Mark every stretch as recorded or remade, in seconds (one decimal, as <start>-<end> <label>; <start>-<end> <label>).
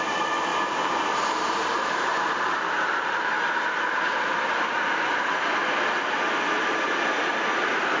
0.0-0.5 recorded; 0.5-5.3 remade; 5.3-8.0 recorded